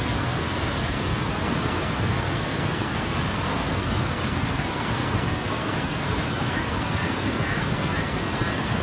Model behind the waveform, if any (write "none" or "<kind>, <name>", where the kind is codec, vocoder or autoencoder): codec, SNAC